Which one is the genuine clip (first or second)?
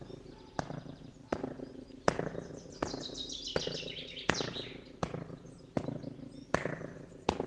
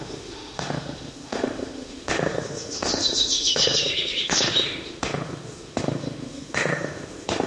first